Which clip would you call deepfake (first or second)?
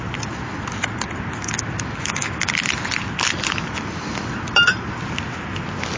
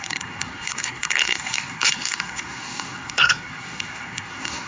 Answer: second